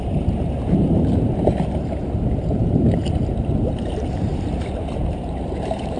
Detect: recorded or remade remade